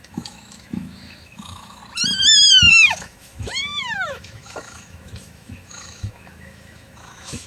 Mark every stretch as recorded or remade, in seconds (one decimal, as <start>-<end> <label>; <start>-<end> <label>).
0.0-1.8 remade; 1.8-2.7 recorded; 2.7-7.5 remade